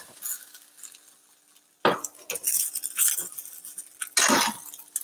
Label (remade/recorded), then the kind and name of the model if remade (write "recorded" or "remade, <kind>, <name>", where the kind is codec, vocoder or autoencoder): recorded